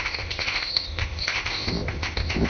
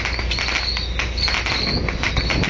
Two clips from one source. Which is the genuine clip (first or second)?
second